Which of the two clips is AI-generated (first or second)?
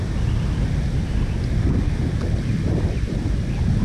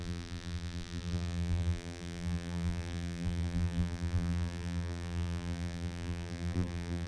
second